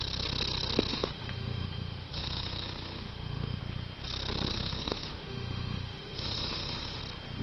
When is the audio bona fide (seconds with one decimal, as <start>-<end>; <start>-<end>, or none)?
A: 0.0-0.9; 3.6-4.5; 7.0-7.4